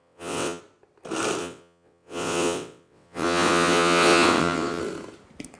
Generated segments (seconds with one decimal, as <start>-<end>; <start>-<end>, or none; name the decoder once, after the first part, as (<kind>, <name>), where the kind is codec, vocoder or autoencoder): 0.0-0.6 (vocoder, WaveNeXt); 1.4-4.8